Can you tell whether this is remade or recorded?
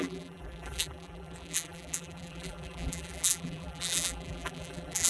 remade